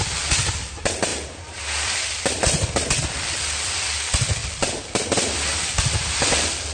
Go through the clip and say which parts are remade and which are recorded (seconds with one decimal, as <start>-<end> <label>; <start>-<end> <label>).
0.0-1.1 recorded; 1.1-3.0 remade; 3.0-4.4 recorded; 4.4-6.3 remade; 6.3-6.7 recorded